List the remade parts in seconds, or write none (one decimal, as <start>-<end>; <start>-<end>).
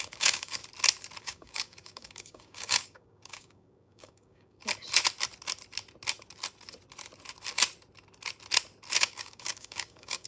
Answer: 0.0-0.6; 1.2-4.6; 9.0-10.3